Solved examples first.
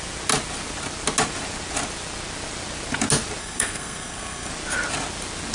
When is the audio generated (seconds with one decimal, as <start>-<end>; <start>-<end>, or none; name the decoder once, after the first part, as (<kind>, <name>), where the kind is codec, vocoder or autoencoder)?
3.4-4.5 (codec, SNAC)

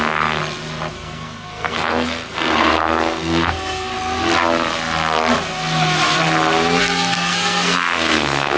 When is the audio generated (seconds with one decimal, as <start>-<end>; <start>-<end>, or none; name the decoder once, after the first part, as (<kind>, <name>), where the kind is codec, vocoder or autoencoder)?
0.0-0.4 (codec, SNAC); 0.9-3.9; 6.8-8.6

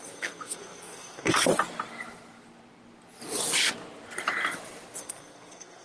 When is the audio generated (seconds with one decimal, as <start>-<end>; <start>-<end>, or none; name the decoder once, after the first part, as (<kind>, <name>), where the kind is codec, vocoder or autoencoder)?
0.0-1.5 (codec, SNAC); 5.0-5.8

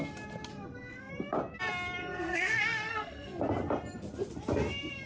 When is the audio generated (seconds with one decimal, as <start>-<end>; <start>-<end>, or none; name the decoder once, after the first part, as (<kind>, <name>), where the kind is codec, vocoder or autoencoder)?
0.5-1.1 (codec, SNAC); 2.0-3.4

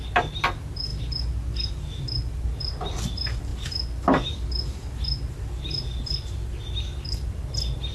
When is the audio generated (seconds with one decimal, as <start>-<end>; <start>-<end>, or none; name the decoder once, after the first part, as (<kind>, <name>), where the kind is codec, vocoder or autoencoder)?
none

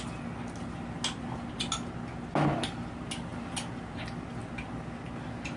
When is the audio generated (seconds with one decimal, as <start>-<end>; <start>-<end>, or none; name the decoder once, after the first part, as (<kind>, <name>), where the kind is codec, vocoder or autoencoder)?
none

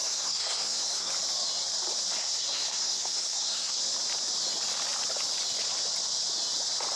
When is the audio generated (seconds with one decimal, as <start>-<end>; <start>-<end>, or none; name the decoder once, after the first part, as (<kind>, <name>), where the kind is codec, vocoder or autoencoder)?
0.0-1.1 (codec, SNAC); 2.2-3.8